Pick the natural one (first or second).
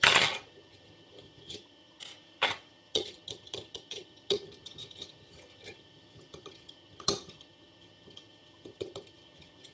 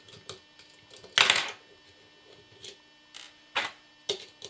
second